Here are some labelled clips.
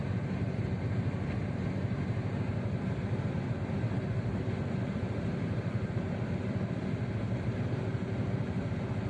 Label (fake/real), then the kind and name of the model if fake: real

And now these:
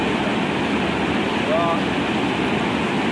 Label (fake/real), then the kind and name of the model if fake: real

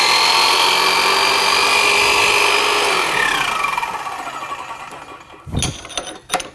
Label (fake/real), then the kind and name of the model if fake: real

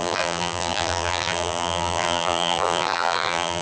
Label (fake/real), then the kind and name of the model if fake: fake, vocoder, BigVGAN v2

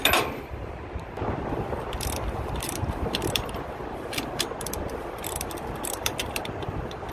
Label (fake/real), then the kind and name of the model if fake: fake, vocoder, BigVGAN v2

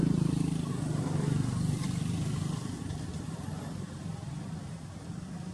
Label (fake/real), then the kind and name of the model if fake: fake, vocoder, BigVGAN v2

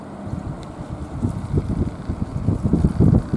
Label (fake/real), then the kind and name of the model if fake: real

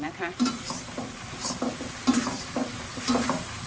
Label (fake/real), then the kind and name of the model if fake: fake, vocoder, BigVGAN v2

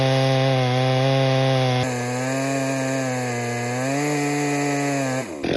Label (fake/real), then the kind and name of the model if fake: real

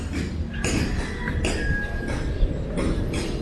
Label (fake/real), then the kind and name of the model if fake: real